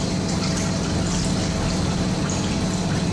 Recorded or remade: recorded